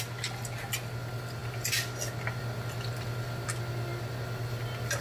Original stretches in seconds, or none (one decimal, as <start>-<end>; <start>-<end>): 0.0-5.0